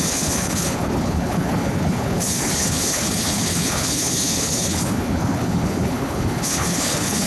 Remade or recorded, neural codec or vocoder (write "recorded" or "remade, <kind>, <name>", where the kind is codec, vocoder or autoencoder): remade, codec, HILCodec